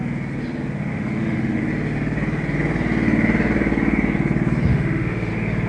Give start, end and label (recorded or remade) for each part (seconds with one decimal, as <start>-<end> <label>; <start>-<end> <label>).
0.0-0.9 recorded; 0.9-1.6 remade; 1.6-4.7 recorded; 4.7-5.3 remade; 5.3-5.7 recorded